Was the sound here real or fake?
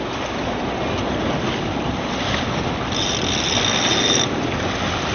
real